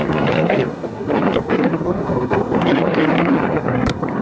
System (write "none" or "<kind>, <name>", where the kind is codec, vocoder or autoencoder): codec, SNAC